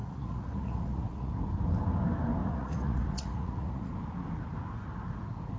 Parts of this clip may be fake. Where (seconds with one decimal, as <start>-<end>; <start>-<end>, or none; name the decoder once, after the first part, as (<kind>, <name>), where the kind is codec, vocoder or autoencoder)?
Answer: 0.0-1.3 (vocoder, Vocos); 2.4-3.9